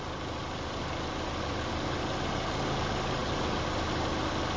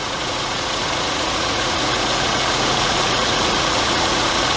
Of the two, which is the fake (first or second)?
second